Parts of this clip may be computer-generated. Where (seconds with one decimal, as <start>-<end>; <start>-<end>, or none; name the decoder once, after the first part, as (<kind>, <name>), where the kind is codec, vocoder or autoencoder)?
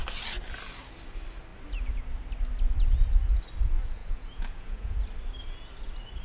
4.0-5.0 (vocoder, Vocos)